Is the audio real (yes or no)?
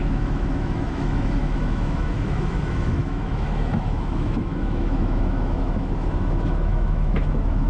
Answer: no